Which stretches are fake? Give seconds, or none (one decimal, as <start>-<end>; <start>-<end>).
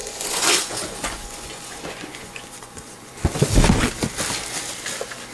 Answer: 0.0-3.2